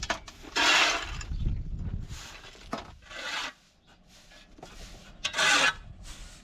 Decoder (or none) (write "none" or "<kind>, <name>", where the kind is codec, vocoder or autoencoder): none